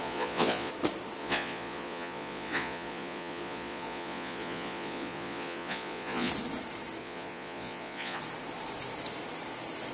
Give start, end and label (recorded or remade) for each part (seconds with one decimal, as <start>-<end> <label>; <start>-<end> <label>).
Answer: 0.0-0.7 remade; 0.7-1.2 recorded; 1.2-6.3 remade; 6.3-7.0 recorded; 7.0-8.2 remade; 8.2-9.9 recorded